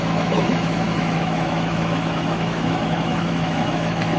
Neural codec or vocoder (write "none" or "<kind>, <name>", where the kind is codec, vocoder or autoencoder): autoencoder, DAC-VAE